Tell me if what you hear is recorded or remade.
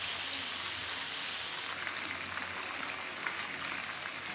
recorded